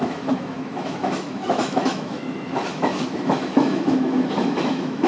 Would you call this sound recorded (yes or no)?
no